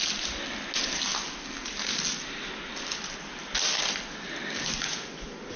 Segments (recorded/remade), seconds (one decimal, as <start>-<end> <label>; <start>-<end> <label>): 0.0-5.6 recorded